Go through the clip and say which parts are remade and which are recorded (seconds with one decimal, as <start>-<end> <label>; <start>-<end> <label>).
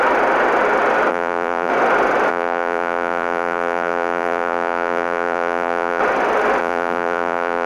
0.0-1.1 recorded; 1.1-1.7 remade; 1.7-2.3 recorded; 2.3-6.0 remade; 6.0-6.6 recorded; 6.6-7.7 remade